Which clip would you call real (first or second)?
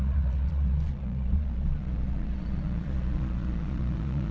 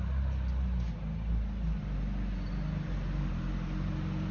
second